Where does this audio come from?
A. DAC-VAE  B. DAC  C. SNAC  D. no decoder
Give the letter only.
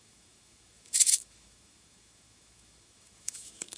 A